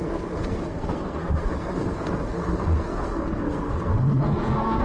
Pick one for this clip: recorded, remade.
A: remade